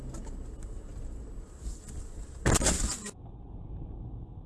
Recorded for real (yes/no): yes